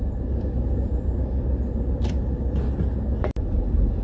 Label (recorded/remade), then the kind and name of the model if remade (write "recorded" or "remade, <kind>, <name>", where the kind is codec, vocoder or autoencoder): recorded